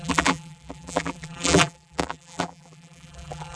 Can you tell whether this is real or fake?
fake